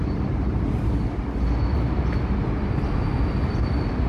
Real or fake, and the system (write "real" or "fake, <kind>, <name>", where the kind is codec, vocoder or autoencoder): real